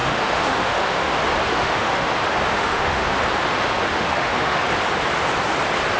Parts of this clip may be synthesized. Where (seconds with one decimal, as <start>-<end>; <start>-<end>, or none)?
0.0-1.1; 1.5-2.1; 2.5-3.2; 3.9-4.6

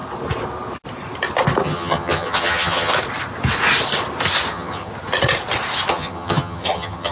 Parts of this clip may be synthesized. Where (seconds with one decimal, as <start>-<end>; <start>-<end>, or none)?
1.6-2.9; 4.5-4.9; 5.9-7.1